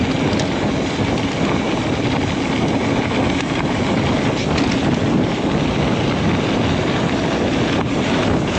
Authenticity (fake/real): real